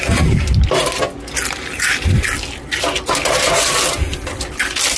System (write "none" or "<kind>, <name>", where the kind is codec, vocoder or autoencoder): none